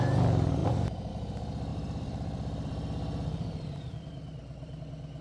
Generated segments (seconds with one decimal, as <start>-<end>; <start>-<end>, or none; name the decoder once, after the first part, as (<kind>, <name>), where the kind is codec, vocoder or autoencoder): 0.6-1.1 (vocoder, BigVGAN v2); 1.7-4.8

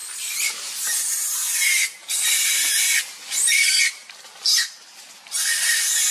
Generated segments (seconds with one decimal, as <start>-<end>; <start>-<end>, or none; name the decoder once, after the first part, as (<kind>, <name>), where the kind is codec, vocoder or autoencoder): 4.0-5.3 (vocoder, BigVGAN v2)

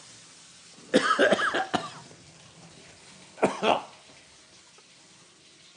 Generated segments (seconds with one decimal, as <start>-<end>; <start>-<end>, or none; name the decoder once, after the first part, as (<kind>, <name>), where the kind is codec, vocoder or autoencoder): none

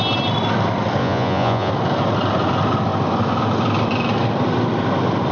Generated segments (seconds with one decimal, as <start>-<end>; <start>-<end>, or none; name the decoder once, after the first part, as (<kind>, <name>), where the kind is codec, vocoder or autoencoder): 1.0-1.7 (vocoder, Vocos)

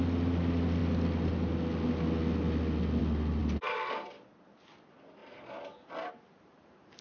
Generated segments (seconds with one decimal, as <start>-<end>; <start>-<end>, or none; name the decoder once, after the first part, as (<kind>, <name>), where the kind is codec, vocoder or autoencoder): none

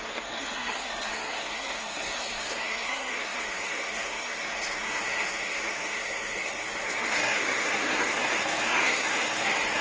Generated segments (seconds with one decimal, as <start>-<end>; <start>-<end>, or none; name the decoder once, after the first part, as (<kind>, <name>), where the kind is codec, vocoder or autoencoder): 0.0-9.8 (codec, SNAC)